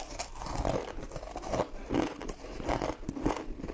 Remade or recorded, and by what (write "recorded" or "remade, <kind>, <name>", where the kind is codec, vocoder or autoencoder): recorded